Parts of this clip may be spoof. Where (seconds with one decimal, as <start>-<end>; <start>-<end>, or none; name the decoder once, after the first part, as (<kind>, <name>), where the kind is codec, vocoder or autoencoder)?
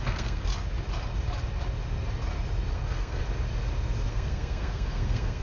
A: 0.0-0.5 (codec, SNAC); 2.7-3.2; 4.1-5.4